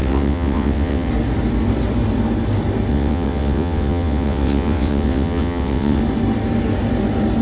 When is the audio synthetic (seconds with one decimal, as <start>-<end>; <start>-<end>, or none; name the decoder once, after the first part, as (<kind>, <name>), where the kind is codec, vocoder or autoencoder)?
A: 0.0-1.1 (vocoder, WaveNeXt); 2.9-6.0